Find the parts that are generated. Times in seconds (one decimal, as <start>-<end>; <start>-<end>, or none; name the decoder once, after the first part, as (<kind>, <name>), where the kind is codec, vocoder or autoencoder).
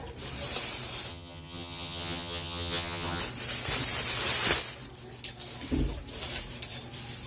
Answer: 1.1-3.2 (vocoder, HiFi-GAN)